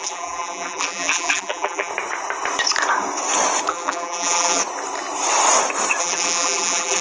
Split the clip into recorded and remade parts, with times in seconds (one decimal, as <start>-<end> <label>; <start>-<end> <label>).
0.0-1.9 remade; 1.9-3.7 recorded; 3.7-4.6 remade; 4.6-6.0 recorded; 6.0-7.0 remade